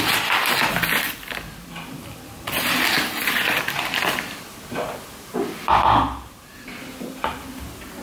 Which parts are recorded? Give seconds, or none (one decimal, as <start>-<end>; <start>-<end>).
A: 0.0-8.0